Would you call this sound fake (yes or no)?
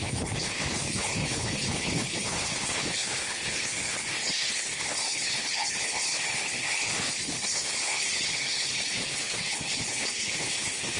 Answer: yes